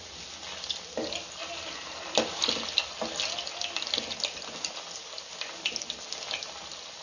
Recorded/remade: recorded